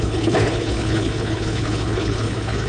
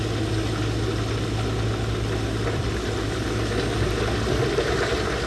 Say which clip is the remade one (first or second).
first